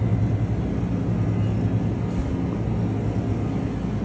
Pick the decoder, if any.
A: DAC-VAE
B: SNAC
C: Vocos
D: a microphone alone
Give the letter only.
D